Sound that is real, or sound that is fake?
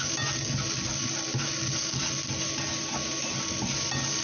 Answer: real